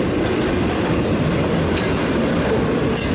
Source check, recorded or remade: recorded